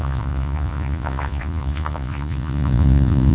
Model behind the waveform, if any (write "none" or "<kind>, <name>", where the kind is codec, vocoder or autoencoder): vocoder, Vocos